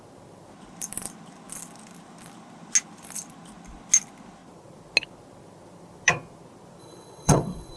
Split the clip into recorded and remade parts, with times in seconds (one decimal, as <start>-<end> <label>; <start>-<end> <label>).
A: 0.0-6.8 recorded; 6.8-7.8 remade